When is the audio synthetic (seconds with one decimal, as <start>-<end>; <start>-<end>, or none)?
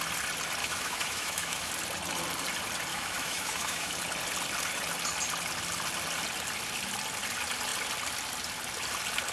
0.6-1.7; 2.9-3.9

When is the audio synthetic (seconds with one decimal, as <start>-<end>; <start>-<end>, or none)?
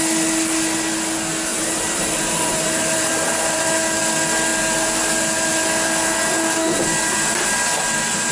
1.5-4.0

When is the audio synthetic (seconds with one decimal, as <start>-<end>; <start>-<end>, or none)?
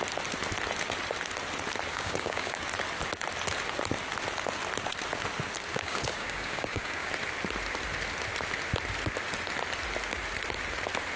1.9-2.6; 5.7-7.1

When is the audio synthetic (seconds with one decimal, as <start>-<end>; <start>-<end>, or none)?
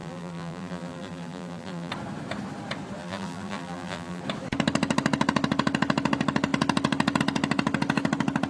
0.0-1.9; 3.0-4.2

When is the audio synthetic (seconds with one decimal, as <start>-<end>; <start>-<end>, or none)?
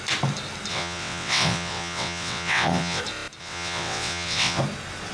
0.7-3.0; 3.4-4.6